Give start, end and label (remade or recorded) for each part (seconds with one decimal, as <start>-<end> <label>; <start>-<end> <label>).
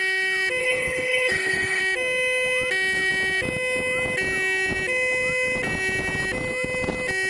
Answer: 0.0-0.6 recorded; 0.6-1.8 remade; 1.8-7.3 recorded